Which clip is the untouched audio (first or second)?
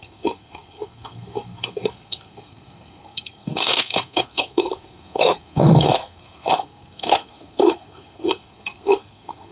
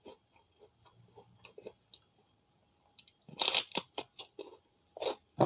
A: second